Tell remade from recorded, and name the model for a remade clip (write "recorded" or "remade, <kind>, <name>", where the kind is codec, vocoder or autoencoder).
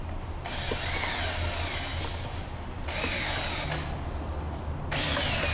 recorded